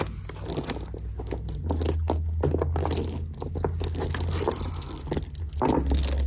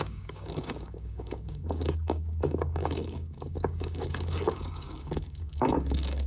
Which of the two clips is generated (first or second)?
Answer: second